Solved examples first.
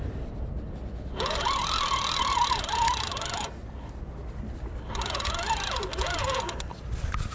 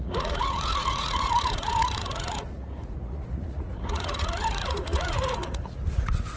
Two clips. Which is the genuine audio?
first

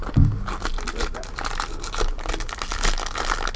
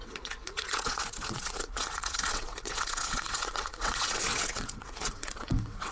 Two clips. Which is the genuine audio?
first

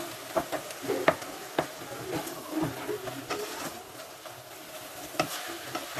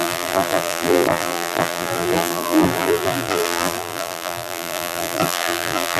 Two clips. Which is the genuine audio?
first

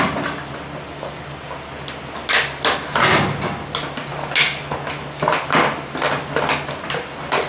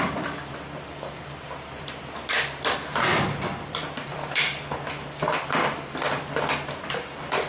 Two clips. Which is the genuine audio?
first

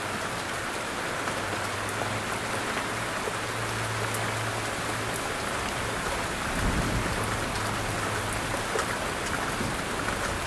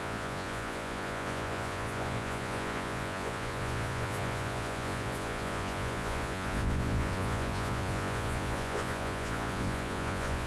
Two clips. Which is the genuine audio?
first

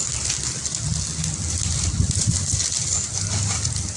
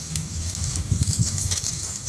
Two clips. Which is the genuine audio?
first